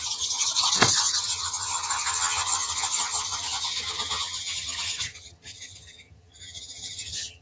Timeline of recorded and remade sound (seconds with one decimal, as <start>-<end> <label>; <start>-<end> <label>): 0.0-0.5 remade; 0.5-1.0 recorded; 1.0-7.4 remade